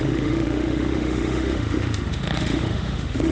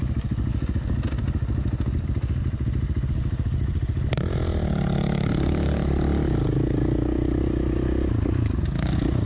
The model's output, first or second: first